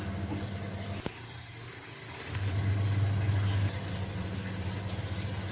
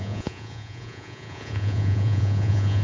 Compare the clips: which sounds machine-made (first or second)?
second